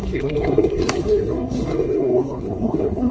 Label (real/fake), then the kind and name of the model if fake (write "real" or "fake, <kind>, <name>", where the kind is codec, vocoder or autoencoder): fake, codec, SNAC